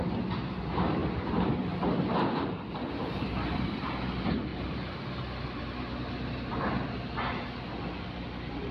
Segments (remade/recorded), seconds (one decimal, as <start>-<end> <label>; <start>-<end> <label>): 0.0-1.0 recorded; 1.0-2.2 remade; 2.2-8.7 recorded